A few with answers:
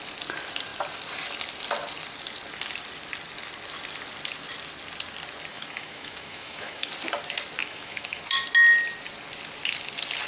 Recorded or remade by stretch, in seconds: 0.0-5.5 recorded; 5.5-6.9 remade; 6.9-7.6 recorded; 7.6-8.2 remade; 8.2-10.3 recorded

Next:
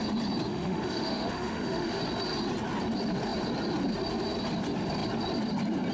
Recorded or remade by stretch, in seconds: 0.0-0.5 recorded; 0.5-2.0 remade; 2.0-5.9 recorded

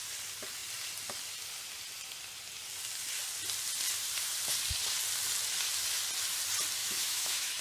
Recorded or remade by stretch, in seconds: 0.0-6.8 recorded; 6.8-7.6 remade

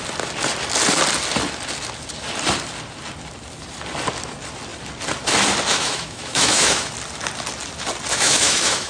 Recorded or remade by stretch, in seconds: 0.0-5.7 recorded; 5.7-6.9 remade; 6.9-8.1 recorded; 8.1-8.9 remade

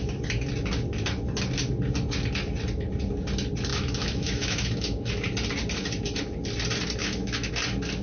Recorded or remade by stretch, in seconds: 0.0-3.7 recorded; 3.7-5.1 remade; 5.1-7.0 recorded; 7.0-7.5 remade; 7.5-8.0 recorded

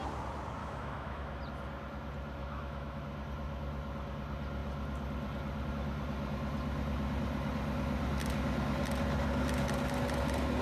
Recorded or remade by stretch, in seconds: 0.0-0.6 recorded; 0.6-1.4 remade; 1.4-2.4 recorded; 2.4-3.0 remade; 3.0-10.6 recorded

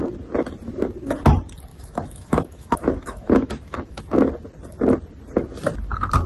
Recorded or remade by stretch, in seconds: 0.0-1.7 recorded; 1.7-4.0 remade; 4.0-6.3 recorded

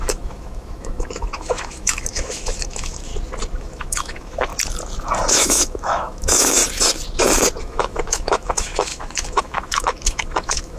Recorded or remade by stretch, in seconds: 0.0-3.1 remade; 3.1-3.6 recorded; 3.6-4.5 remade; 4.5-5.3 recorded; 5.3-6.6 remade; 6.6-7.6 recorded; 7.6-10.8 remade